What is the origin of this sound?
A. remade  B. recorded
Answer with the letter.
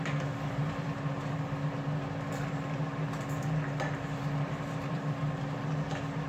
A